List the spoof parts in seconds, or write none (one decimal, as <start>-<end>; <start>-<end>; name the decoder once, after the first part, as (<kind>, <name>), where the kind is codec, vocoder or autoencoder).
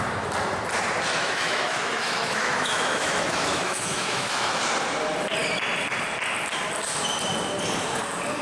1.2-4.6 (autoencoder, DAC-VAE)